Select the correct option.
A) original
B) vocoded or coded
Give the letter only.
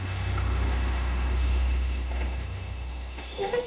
B